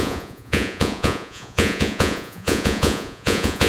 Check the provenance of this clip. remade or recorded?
remade